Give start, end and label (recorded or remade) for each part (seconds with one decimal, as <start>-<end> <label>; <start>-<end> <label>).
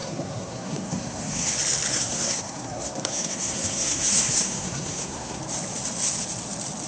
0.0-1.5 remade; 1.5-1.9 recorded; 1.9-5.4 remade; 5.4-6.9 recorded